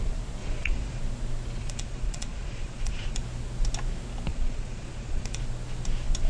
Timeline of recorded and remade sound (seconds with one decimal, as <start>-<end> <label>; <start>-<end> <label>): 0.0-0.4 recorded; 0.4-1.0 remade; 1.0-1.6 recorded; 1.6-3.2 remade; 3.2-4.3 recorded; 4.3-5.4 remade; 5.4-6.3 recorded